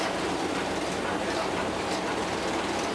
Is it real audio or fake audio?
real